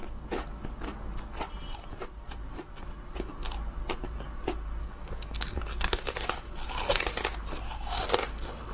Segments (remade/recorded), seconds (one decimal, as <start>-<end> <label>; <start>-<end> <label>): 0.0-4.8 recorded; 4.8-5.6 remade; 5.6-8.7 recorded